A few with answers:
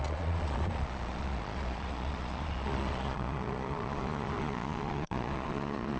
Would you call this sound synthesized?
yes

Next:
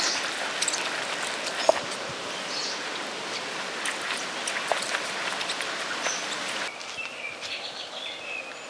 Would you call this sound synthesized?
no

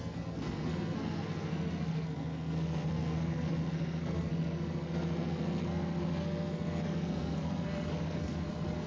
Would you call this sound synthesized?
yes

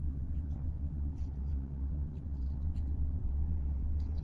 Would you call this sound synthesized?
yes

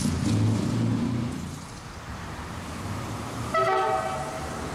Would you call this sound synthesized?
no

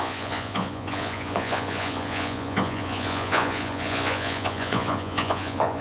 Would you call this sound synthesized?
yes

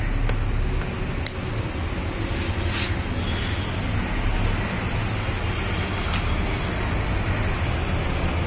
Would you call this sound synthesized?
no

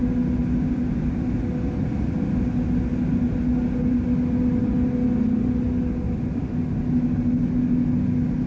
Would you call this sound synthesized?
no